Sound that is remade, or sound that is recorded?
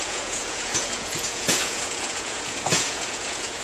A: remade